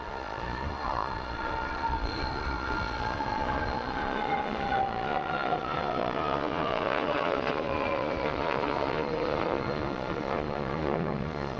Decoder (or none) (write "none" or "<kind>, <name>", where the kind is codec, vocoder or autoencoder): vocoder, Vocos